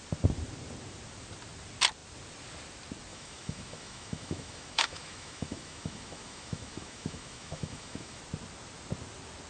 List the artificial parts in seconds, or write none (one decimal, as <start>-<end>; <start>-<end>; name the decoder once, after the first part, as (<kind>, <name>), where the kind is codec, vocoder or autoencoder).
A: 3.1-8.2 (autoencoder, DAC-VAE)